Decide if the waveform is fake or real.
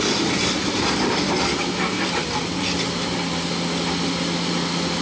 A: real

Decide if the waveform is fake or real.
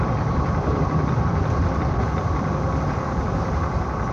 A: fake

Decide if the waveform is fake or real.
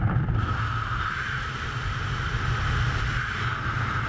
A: real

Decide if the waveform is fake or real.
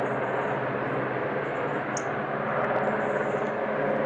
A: real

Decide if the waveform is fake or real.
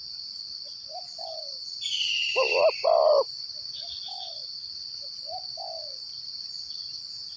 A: real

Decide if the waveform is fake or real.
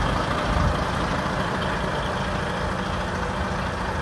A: real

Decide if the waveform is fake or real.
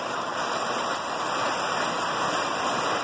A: real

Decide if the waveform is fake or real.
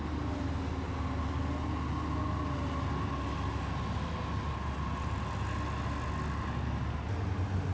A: real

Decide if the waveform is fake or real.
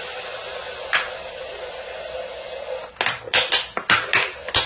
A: real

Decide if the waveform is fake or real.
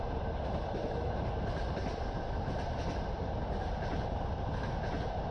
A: real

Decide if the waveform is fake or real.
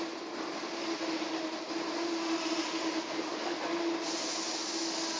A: real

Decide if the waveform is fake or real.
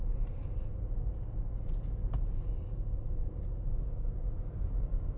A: real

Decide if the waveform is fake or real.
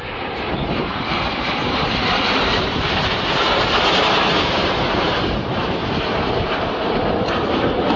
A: fake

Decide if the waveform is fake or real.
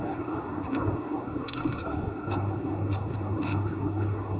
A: fake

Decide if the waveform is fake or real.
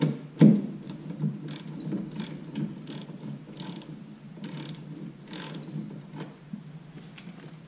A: real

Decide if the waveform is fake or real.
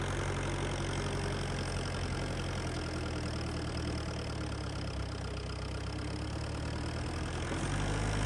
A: real